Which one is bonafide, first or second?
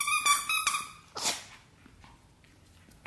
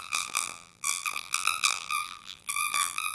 first